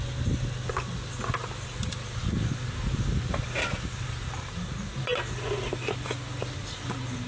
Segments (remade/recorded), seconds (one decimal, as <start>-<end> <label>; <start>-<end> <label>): 0.0-7.3 recorded